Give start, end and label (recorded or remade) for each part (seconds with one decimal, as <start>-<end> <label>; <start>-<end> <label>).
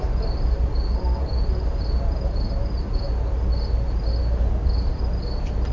0.0-5.7 remade